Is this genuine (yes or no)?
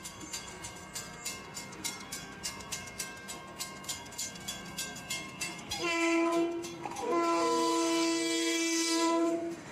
no